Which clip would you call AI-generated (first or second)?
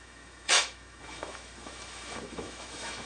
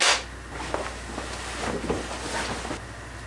first